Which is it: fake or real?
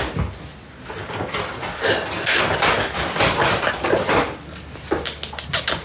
real